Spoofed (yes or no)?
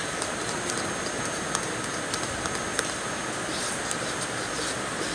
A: no